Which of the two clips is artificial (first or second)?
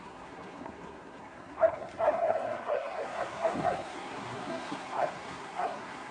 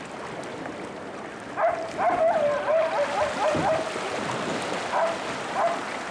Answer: first